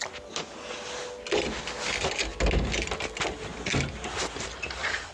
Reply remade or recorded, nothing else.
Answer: recorded